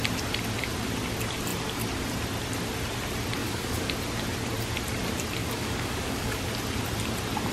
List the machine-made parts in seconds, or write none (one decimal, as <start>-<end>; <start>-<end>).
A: 3.4-3.9; 5.4-6.5